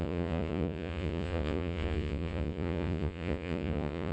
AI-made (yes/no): yes